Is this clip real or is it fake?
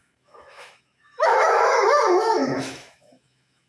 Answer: fake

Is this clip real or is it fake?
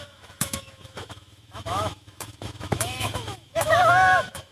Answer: fake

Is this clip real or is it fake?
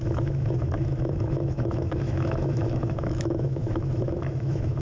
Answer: fake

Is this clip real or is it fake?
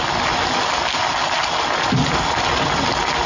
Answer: real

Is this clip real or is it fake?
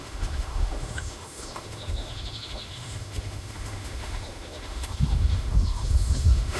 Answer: fake